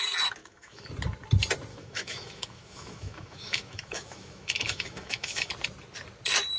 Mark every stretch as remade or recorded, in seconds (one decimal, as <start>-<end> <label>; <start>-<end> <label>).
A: 0.0-0.4 recorded; 0.4-0.9 remade; 0.9-1.7 recorded; 1.7-5.5 remade; 5.5-6.6 recorded